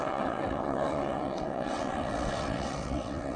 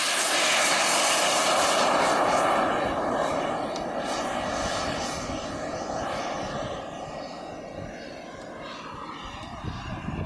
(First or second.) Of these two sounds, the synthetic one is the first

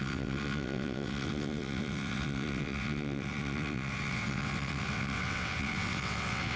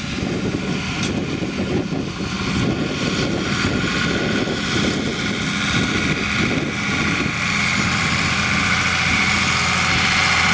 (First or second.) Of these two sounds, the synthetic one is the first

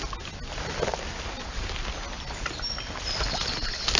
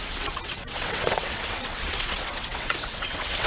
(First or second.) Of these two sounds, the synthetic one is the second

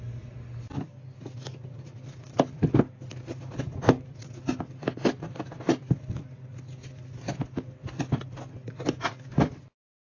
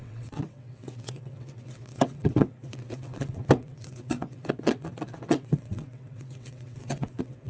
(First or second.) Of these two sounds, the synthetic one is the second